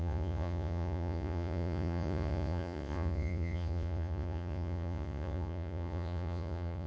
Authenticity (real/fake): fake